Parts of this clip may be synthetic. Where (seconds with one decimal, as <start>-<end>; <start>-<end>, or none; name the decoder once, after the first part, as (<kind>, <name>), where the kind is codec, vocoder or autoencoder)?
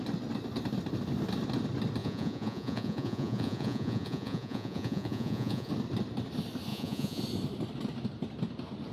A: 2.0-5.7 (vocoder, Vocos); 6.7-7.2